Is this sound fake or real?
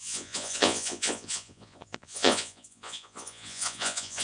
fake